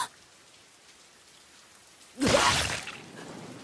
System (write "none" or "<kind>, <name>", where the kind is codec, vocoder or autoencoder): none